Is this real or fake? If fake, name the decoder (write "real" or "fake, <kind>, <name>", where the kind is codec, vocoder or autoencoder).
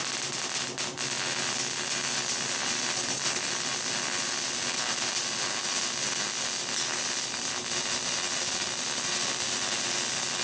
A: real